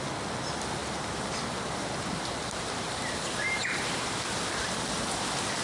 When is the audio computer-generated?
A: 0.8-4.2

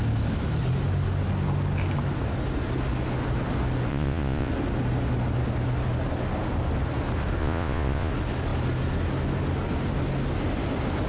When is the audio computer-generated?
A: 3.9-4.5; 7.4-8.1

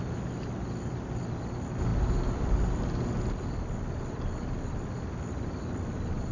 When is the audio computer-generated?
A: none

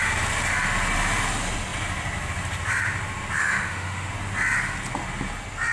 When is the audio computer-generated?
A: 3.4-4.1